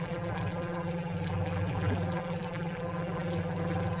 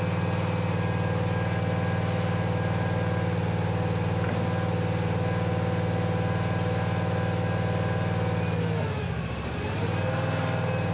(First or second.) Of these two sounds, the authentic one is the second